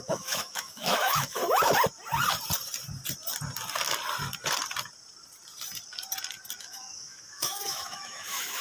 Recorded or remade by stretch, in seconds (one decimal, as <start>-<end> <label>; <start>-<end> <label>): 0.0-1.4 remade; 1.4-6.6 recorded; 6.6-8.6 remade